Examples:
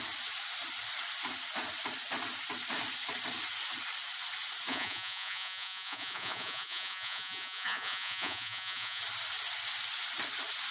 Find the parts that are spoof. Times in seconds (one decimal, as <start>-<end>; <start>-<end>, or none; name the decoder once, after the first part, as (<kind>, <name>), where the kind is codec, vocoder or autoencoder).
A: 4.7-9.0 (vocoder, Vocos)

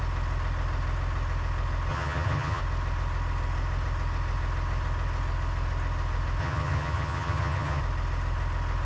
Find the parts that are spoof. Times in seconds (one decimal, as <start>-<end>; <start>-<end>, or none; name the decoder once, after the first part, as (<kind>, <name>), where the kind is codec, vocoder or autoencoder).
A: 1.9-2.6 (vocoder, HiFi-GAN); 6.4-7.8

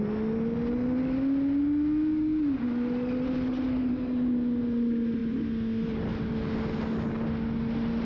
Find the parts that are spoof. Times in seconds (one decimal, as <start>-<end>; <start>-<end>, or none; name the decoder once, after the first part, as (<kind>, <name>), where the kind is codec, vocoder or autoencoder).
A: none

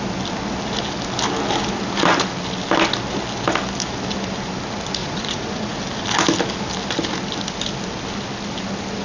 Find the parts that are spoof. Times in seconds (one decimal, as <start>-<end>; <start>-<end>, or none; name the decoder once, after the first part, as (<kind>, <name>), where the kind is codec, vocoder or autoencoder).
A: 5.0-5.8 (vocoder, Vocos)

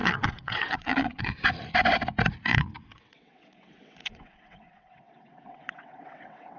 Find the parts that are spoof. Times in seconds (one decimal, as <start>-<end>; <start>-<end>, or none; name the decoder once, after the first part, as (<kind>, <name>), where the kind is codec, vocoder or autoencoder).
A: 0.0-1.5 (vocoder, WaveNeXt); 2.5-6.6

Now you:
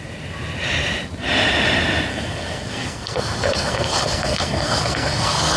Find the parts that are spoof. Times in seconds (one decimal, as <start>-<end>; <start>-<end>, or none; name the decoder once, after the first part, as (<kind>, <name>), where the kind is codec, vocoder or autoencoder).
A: 2.1-5.6 (codec, SNAC)

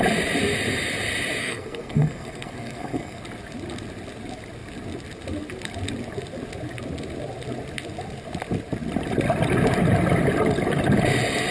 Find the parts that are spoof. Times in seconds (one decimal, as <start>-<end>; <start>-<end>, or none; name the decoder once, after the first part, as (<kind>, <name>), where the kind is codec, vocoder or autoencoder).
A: 1.4-3.2 (codec, SNAC)